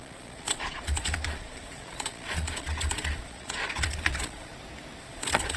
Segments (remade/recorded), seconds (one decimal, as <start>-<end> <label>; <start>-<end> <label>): 0.0-4.5 remade; 4.5-5.0 recorded; 5.0-5.6 remade